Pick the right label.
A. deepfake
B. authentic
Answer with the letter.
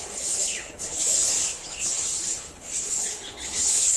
A